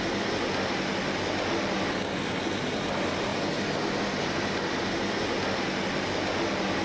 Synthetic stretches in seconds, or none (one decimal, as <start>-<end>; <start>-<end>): none